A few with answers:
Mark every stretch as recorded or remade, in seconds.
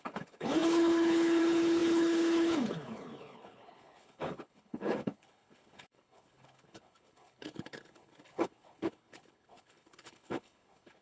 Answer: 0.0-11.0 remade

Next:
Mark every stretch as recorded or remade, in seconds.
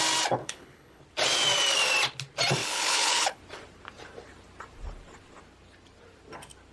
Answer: 0.0-0.4 recorded; 0.4-1.0 remade; 1.0-2.6 recorded; 2.6-3.4 remade; 3.4-6.7 recorded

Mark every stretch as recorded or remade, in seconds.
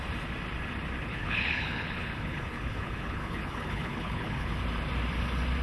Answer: 0.0-1.1 recorded; 1.1-4.5 remade; 4.5-5.6 recorded